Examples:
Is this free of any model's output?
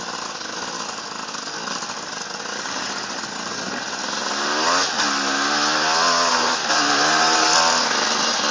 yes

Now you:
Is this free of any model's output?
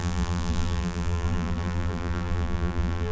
no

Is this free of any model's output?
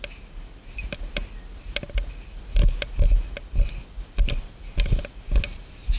yes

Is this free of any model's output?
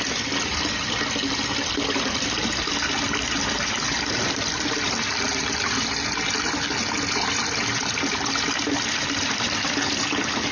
yes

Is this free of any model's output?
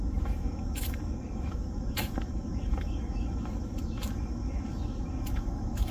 no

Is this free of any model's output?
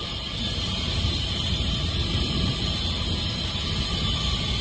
yes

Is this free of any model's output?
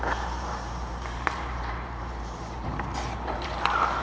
no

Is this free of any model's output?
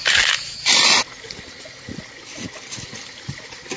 yes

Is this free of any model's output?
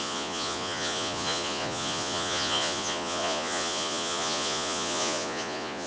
no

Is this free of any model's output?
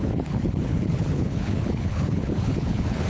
no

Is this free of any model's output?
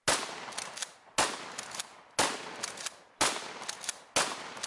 yes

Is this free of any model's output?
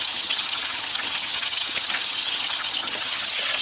no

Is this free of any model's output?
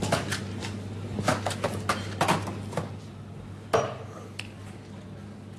yes